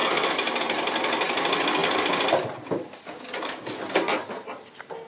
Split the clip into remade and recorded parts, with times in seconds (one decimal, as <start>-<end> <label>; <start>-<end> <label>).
0.0-0.6 remade; 0.6-5.1 recorded